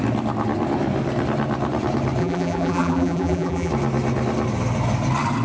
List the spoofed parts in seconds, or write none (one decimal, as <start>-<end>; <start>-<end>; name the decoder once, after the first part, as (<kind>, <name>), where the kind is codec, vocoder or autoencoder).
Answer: 2.2-3.7 (vocoder, BigVGAN v2)